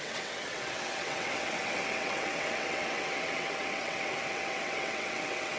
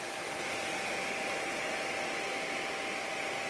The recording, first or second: second